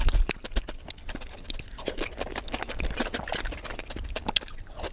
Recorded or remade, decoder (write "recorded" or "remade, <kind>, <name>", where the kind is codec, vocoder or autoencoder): recorded